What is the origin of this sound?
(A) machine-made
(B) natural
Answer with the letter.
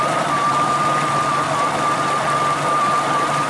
B